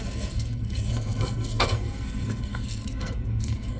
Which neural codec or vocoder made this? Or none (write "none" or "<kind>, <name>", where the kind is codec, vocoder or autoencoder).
codec, SNAC